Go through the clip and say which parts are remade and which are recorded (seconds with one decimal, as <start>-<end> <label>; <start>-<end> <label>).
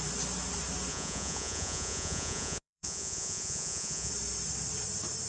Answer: 0.0-0.9 recorded; 0.9-4.1 remade; 4.1-5.3 recorded